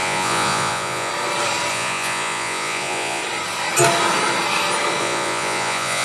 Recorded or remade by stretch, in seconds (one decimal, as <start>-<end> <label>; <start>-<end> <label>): 0.0-1.1 remade; 1.1-1.7 recorded; 1.7-3.2 remade; 3.2-5.0 recorded; 5.0-6.0 remade